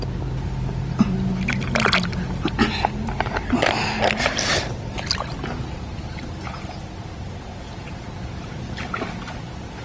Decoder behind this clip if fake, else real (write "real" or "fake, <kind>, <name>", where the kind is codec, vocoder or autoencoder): real